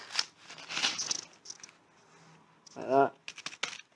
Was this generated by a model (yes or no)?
no